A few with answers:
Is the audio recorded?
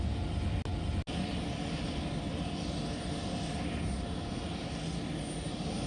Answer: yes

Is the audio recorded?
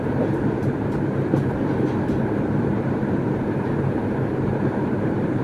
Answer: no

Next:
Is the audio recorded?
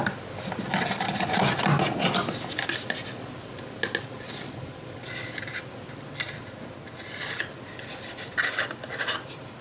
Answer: yes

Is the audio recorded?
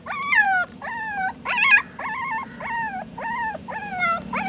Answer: no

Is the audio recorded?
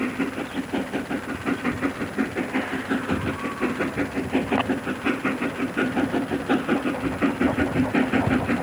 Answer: yes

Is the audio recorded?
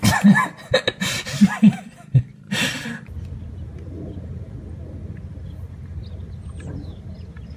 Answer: yes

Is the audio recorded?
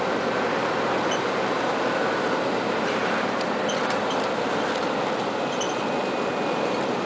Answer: no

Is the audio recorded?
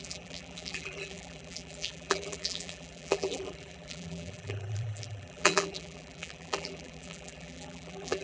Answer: no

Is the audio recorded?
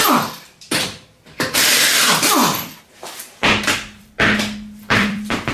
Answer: no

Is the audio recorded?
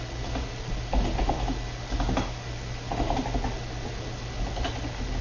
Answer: yes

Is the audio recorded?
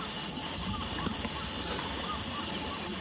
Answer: yes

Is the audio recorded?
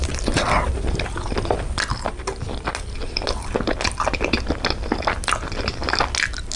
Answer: yes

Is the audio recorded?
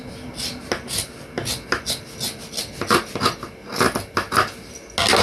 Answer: yes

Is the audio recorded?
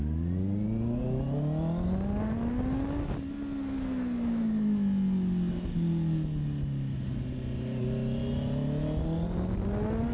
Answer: yes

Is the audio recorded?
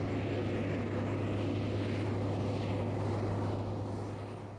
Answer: yes